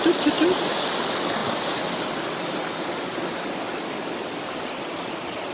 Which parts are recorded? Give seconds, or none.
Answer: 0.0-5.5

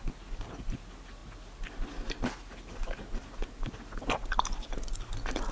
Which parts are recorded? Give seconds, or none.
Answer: 0.0-5.5

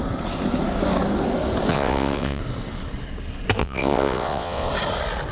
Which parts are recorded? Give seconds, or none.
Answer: 0.0-1.7; 2.4-3.6; 4.7-5.3

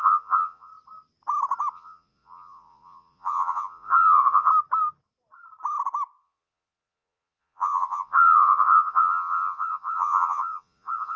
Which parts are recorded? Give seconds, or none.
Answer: 0.7-1.7; 4.5-6.2

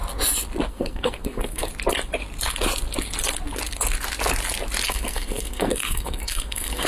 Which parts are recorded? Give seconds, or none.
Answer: 0.0-0.7; 1.7-4.9

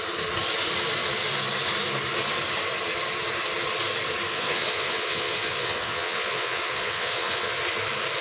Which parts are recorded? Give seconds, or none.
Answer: 0.0-4.3; 7.6-8.2

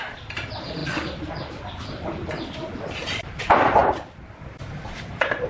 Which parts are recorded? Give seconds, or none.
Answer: 0.8-3.4; 3.8-4.4

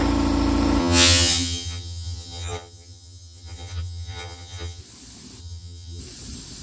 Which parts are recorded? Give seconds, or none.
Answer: 0.0-0.8; 4.8-5.4; 6.0-6.6